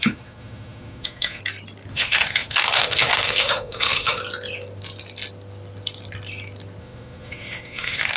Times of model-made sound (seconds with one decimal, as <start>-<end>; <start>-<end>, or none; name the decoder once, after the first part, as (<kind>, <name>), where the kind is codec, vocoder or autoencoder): 0.0-1.4 (autoencoder, DAC-VAE); 1.9-4.2; 6.8-8.2

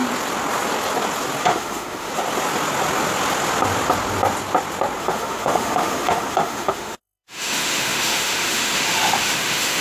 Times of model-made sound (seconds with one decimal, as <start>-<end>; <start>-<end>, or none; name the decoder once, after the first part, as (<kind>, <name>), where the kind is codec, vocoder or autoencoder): 1.4-2.1 (autoencoder, DAC-VAE); 5.0-9.8